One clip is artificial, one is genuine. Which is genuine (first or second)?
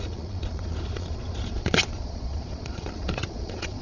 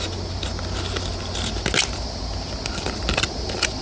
second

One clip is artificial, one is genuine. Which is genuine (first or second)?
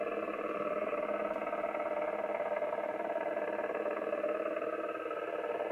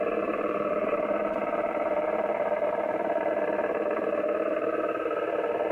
first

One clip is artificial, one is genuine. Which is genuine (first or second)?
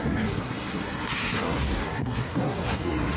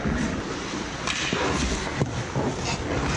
second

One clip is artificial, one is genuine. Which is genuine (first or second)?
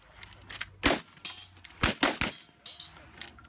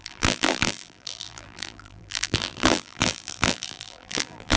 first